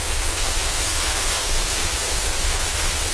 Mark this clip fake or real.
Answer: fake